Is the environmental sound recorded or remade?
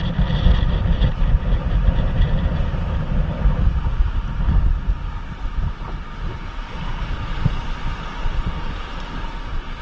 recorded